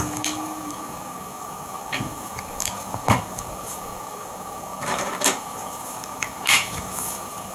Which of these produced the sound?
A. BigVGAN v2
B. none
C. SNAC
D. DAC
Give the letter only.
D